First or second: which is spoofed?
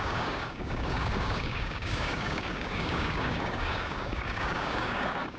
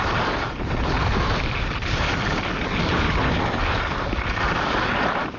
first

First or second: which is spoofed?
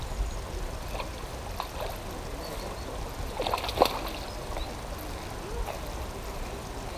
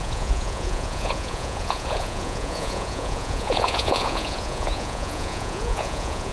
second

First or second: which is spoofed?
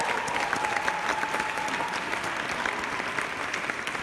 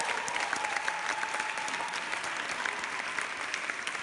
second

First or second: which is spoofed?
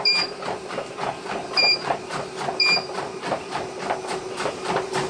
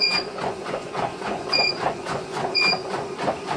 second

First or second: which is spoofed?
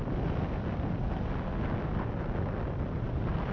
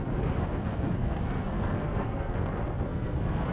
second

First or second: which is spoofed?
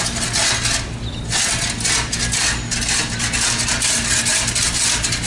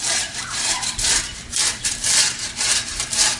second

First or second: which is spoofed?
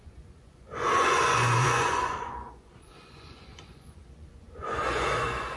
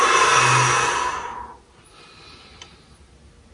first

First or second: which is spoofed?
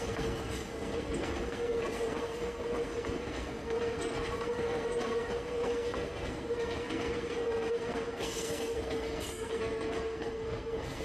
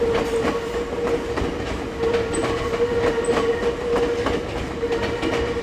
first